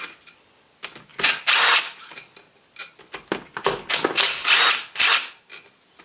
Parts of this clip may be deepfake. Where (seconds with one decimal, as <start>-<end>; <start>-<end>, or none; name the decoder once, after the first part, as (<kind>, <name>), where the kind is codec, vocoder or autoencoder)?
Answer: none